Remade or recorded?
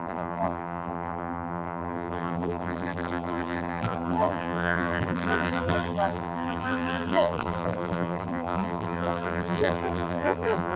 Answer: remade